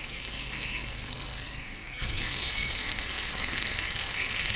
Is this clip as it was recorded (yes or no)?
no